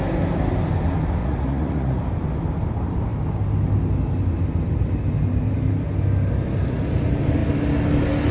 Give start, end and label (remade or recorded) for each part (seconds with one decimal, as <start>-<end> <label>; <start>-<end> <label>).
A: 0.0-1.2 recorded; 1.2-2.0 remade; 2.0-8.3 recorded